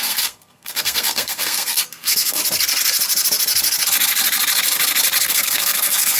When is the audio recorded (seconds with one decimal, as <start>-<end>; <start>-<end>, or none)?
2.4-5.3